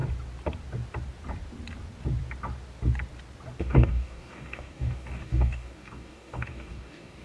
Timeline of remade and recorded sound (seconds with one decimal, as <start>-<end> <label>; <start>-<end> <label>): 0.0-3.6 recorded; 3.6-7.2 remade